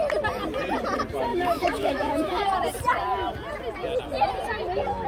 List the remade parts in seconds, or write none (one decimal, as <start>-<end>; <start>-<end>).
1.3-2.4